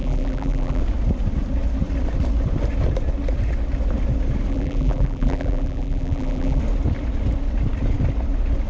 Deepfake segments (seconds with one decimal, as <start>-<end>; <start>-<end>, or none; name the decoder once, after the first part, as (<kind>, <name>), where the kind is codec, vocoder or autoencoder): 0.0-0.8 (vocoder, BigVGAN v2); 4.5-6.6